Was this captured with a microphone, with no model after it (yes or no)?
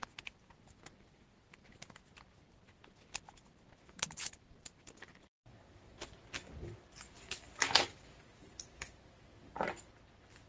yes